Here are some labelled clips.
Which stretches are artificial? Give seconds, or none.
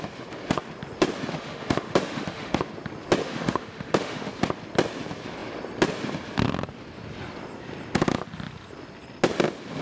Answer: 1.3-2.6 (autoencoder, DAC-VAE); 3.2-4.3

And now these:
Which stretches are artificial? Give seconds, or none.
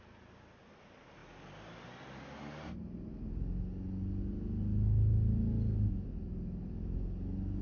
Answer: none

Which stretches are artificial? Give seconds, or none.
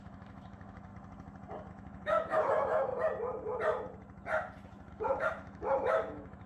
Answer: 0.0-0.9 (autoencoder, DAC-VAE); 1.7-2.9; 4.9-6.5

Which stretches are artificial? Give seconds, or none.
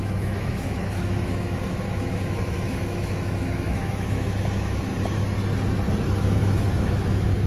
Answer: 0.0-4.9 (autoencoder, DAC-VAE); 6.2-7.5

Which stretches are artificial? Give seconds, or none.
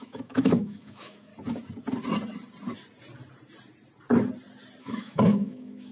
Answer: 0.0-1.3 (autoencoder, DAC-VAE); 4.8-5.9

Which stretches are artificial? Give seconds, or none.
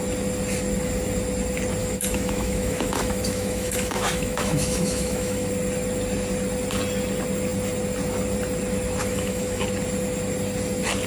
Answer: 1.8-5.5 (autoencoder, DAC-VAE); 9.0-9.6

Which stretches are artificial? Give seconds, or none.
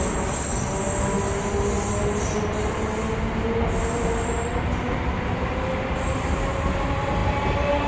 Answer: none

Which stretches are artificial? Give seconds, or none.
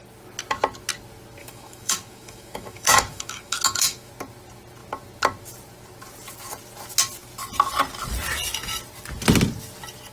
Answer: 1.4-4.1 (autoencoder, DAC-VAE)